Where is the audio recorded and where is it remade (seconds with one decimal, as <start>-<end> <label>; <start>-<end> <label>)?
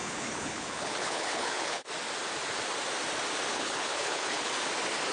0.0-1.9 remade; 1.9-3.5 recorded; 3.5-4.5 remade; 4.5-5.1 recorded